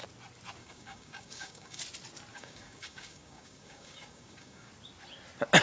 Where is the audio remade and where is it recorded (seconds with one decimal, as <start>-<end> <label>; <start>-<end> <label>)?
0.0-0.6 recorded; 0.6-1.8 remade; 1.8-2.3 recorded; 2.3-4.7 remade; 4.7-5.6 recorded